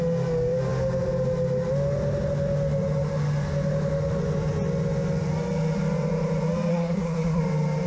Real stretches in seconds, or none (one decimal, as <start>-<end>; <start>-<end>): 0.0-6.7; 7.4-7.9